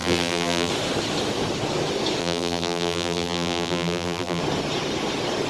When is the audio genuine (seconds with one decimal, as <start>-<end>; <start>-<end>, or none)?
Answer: 0.7-2.2; 4.4-5.5